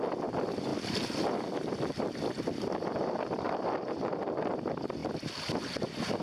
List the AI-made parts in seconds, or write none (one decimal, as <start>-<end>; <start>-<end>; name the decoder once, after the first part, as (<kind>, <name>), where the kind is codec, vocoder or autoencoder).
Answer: none